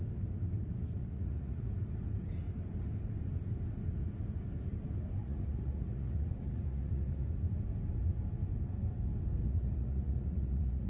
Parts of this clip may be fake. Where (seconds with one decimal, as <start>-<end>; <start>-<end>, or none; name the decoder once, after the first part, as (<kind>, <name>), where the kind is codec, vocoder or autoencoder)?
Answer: 1.0-1.7 (vocoder, Vocos); 5.2-7.5; 9.4-10.9